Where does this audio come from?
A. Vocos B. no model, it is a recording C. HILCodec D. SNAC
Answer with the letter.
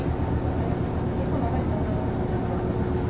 B